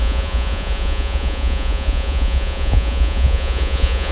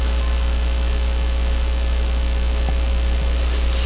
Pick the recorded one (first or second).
second